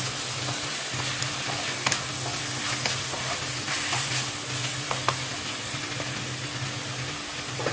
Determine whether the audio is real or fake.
real